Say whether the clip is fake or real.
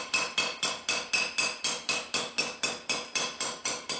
real